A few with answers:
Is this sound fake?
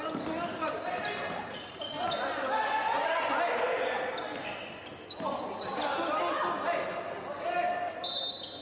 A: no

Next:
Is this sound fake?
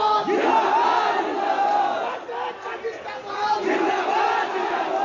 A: no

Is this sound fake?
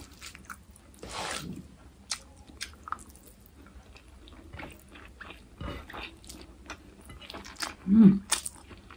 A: no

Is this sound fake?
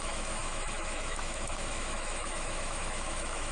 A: yes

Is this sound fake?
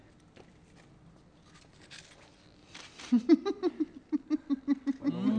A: no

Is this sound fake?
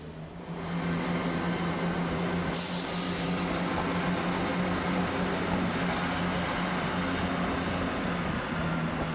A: no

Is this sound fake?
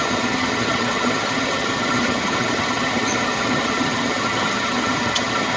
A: yes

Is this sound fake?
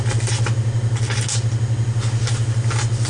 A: no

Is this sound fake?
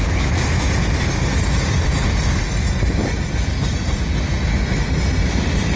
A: no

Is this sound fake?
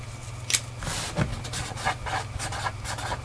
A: no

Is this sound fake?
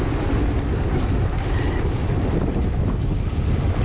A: no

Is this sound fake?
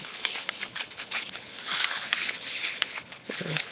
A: yes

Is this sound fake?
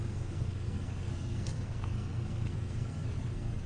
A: yes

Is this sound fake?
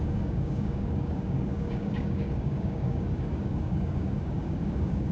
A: yes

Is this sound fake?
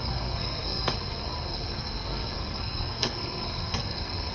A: yes